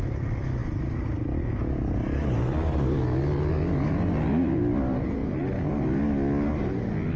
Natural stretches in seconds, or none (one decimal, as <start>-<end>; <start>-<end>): 0.0-7.2